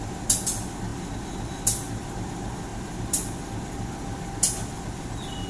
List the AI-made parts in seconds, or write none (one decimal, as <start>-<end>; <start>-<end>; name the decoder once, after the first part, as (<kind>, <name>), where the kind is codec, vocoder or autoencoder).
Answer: none